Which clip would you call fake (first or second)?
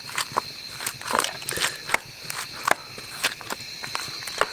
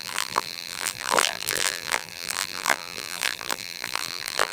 second